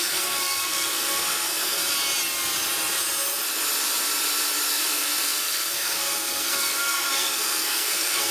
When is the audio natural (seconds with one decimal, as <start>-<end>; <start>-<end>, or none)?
1.8-4.7